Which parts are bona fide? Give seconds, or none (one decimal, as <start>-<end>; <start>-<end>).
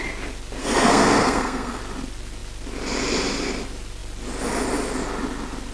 0.0-0.6; 1.8-5.7